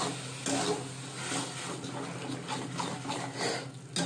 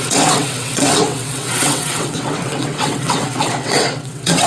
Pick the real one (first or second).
first